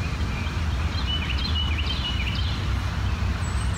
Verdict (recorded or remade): recorded